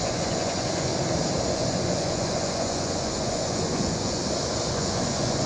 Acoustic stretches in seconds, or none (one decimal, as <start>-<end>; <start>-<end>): 0.9-1.5; 4.2-4.7